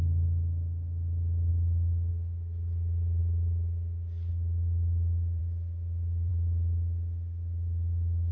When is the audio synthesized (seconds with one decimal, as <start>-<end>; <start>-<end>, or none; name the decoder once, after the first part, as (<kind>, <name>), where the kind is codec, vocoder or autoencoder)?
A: none